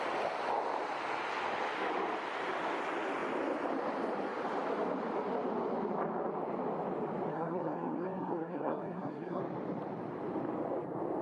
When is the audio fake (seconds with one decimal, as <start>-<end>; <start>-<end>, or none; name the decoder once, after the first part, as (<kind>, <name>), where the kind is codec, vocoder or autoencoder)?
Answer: 7.3-9.4 (codec, SNAC)